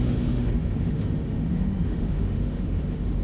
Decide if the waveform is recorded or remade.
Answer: remade